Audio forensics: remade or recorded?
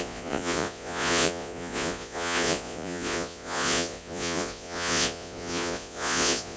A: remade